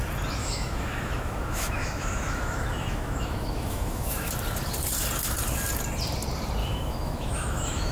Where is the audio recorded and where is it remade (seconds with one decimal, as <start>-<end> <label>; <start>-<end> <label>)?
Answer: 0.0-0.4 recorded; 0.4-4.3 remade; 4.3-6.6 recorded; 6.6-7.9 remade